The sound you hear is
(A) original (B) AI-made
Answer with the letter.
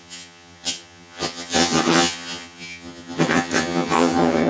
B